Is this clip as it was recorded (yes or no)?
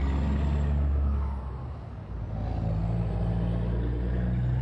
yes